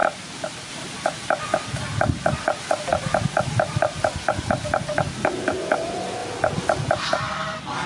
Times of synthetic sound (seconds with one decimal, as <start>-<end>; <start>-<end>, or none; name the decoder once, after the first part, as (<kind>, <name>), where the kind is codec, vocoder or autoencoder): none